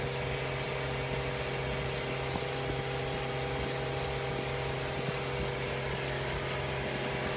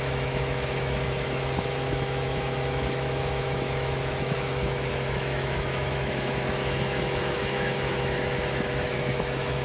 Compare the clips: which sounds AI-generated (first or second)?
second